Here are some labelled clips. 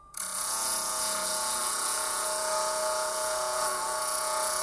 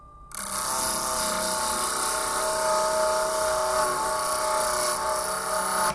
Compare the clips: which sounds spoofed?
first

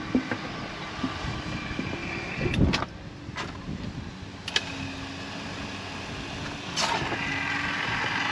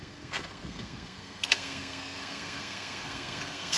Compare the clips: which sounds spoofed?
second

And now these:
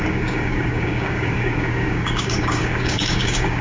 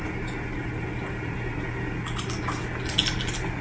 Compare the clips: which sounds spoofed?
first